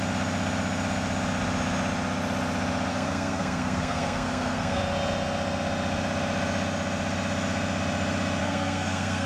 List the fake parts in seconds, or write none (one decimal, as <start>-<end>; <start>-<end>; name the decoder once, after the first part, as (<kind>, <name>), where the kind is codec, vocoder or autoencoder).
2.9-4.8 (codec, SNAC); 8.4-9.3